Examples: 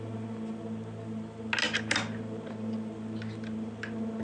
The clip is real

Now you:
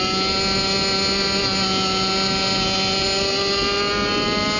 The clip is real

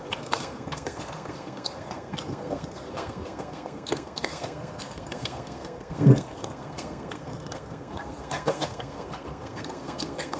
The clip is fake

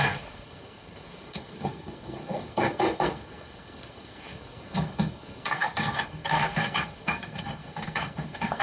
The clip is fake